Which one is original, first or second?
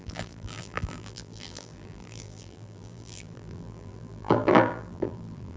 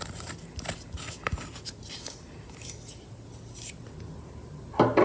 second